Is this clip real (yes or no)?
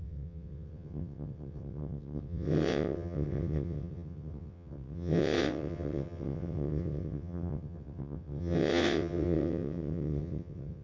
no